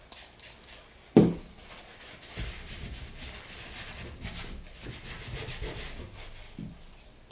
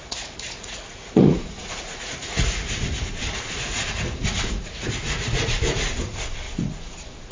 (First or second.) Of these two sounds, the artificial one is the second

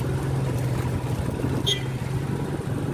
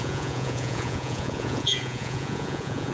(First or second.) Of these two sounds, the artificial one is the second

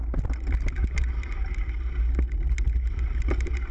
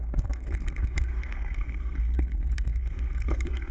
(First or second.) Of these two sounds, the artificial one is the second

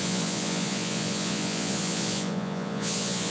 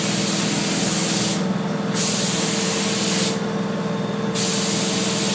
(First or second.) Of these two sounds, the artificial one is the first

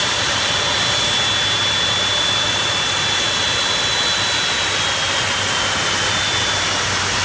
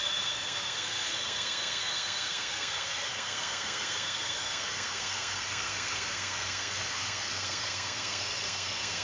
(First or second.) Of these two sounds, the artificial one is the second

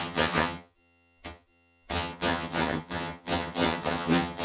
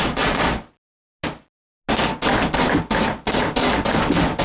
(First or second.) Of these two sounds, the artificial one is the first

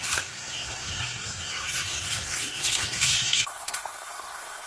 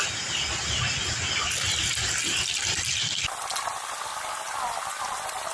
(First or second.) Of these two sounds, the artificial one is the first